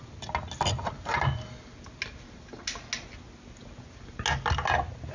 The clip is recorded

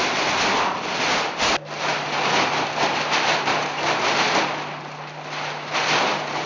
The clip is recorded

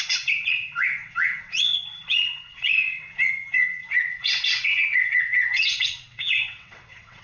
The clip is remade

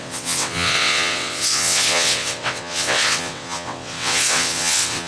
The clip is remade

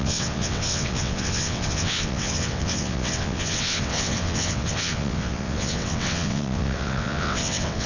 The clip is remade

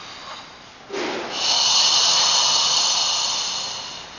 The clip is recorded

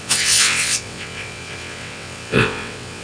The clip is remade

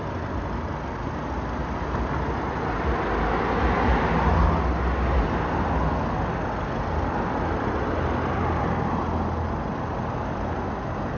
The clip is recorded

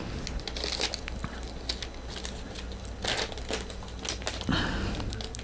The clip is recorded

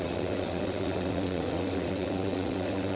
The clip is remade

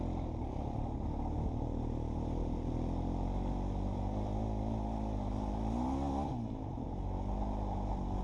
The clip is recorded